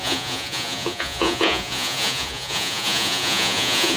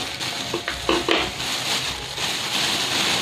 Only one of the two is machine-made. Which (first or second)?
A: first